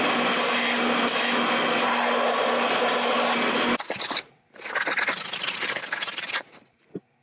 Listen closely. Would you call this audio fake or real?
real